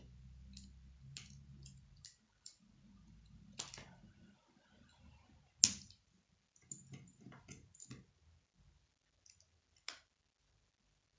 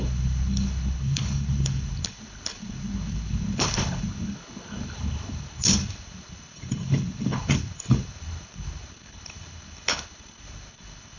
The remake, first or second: second